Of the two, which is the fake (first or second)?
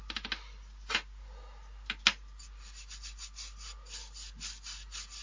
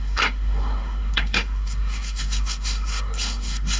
second